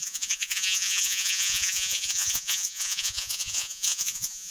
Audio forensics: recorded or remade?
remade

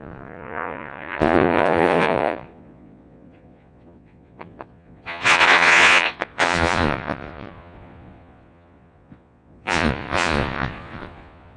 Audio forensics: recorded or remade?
remade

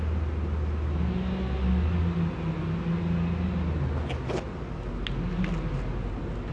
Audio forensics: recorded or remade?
recorded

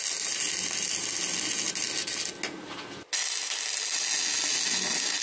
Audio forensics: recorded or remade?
recorded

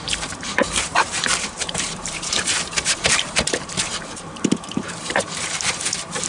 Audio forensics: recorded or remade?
remade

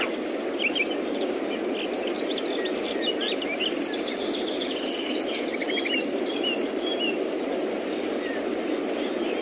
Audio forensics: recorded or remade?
recorded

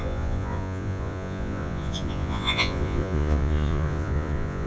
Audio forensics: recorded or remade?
remade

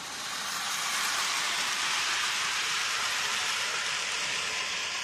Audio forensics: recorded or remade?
remade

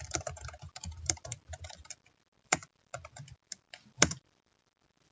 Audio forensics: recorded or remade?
remade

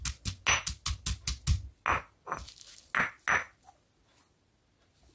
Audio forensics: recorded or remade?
recorded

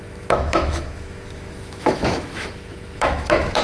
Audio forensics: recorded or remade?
remade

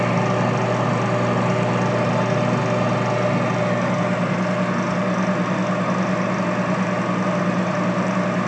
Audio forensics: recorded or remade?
recorded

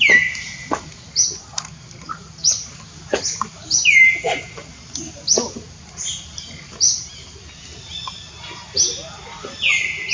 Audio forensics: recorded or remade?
recorded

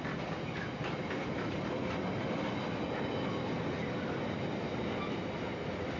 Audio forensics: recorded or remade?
recorded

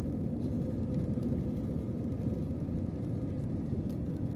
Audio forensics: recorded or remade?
remade